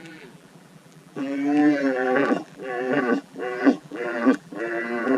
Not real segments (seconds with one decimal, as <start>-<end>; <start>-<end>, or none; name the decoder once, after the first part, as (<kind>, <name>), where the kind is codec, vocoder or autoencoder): 0.0-5.2 (vocoder, BigVGAN v2)